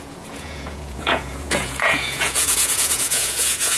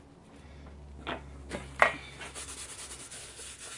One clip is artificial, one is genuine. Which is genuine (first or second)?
second